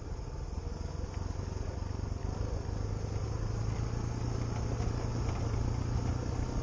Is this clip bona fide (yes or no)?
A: yes